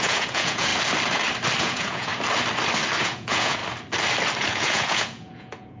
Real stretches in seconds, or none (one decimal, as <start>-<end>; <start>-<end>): 0.7-1.6; 2.1-3.0; 3.6-4.4